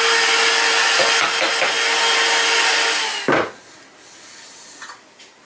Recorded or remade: recorded